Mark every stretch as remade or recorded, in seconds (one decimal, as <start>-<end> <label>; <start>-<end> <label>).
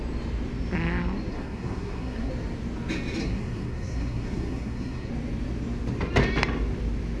0.0-1.3 recorded; 1.3-2.3 remade; 2.3-3.2 recorded; 3.2-5.1 remade; 5.1-7.2 recorded